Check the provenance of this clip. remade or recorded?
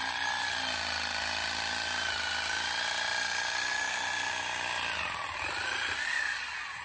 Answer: recorded